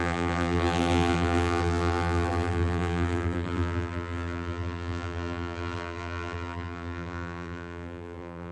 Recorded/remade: remade